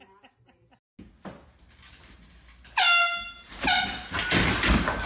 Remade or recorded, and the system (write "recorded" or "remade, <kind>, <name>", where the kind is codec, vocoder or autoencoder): recorded